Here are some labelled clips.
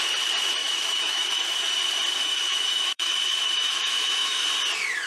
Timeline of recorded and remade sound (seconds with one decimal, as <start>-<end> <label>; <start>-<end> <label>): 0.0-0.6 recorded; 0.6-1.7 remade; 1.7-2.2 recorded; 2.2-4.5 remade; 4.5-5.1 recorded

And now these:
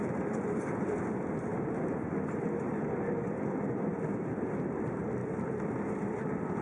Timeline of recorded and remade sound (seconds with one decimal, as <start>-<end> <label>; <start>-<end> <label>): 0.0-1.5 remade; 1.5-3.0 recorded; 3.0-6.6 remade

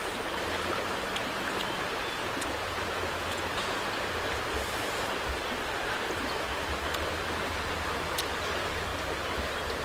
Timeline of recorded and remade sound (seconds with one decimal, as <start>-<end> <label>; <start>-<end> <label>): 0.0-2.2 recorded; 2.2-3.9 remade; 3.9-9.8 recorded

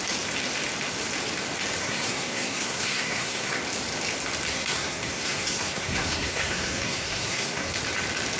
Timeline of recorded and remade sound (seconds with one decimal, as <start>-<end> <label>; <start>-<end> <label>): 0.0-1.8 recorded; 1.8-3.6 remade; 3.6-4.5 recorded; 4.5-7.7 remade; 7.7-8.4 recorded

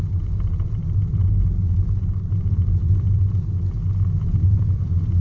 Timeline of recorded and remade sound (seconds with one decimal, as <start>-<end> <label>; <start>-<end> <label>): 0.0-1.0 remade; 1.0-4.1 recorded; 4.1-5.2 remade

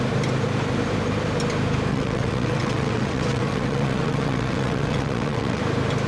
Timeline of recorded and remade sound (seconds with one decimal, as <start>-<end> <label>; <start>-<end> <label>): 0.0-1.9 recorded; 1.9-5.6 remade; 5.6-6.1 recorded